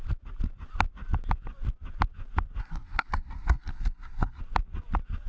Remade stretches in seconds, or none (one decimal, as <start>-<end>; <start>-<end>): 2.6-4.4